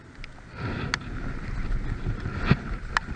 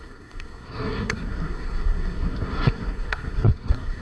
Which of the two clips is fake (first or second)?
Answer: second